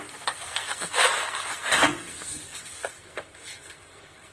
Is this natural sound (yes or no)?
no